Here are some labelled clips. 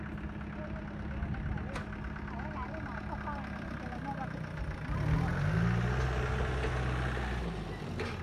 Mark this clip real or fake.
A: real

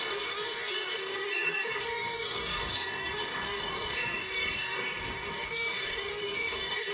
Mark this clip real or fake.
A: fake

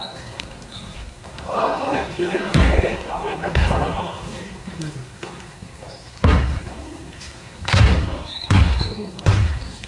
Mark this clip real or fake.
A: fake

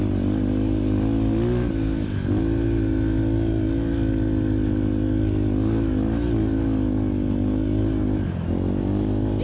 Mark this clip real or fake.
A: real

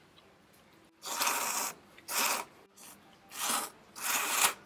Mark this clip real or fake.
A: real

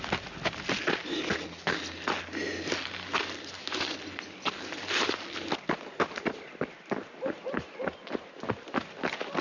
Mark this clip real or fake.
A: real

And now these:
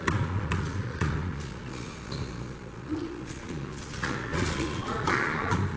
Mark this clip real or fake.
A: fake